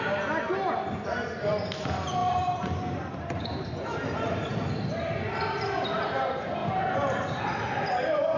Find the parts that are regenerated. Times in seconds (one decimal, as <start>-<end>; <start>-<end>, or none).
2.2-4.5; 6.6-7.4